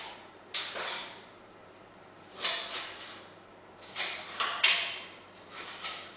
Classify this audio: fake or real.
fake